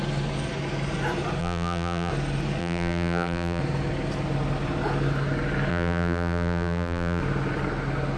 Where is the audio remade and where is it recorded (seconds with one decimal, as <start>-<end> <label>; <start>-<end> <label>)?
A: 0.0-1.4 recorded; 1.4-2.1 remade; 2.1-2.6 recorded; 2.6-3.6 remade; 3.6-5.7 recorded; 5.7-7.2 remade; 7.2-8.2 recorded